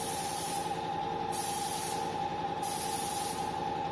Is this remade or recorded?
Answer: recorded